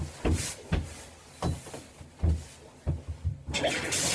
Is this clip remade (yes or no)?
no